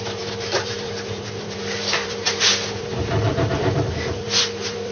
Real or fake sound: fake